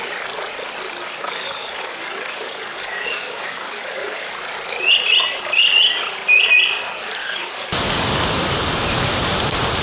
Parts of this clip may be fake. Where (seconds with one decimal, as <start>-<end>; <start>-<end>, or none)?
1.0-4.3; 7.2-7.7